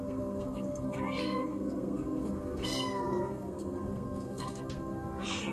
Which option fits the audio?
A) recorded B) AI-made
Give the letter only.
B